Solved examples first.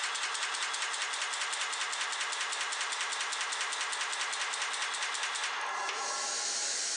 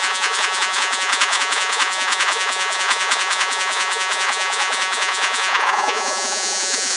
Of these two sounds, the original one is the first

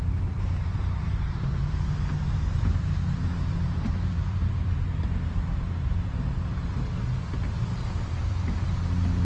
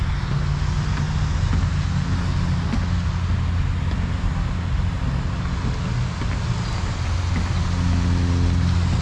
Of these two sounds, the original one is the second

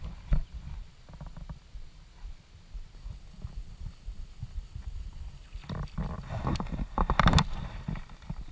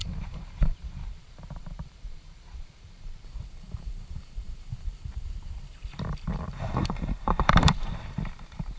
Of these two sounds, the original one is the first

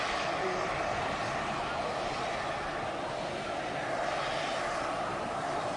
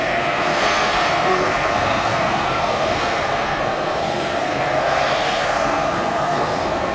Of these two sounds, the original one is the first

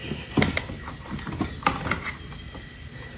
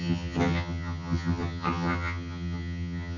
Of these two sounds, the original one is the first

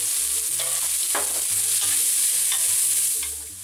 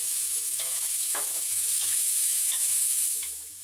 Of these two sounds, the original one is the first